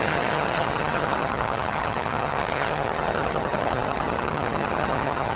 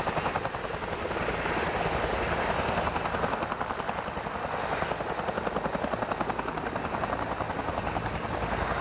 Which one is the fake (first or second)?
first